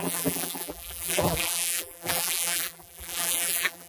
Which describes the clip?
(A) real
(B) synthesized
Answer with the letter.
B